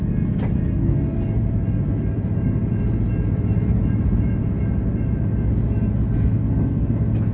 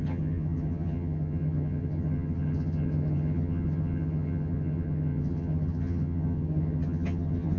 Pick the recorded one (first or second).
first